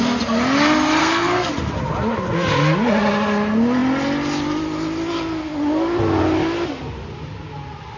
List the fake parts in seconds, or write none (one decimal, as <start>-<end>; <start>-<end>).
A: 1.0-1.5

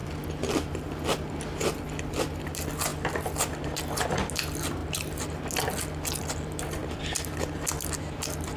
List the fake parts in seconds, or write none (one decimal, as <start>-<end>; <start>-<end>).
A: none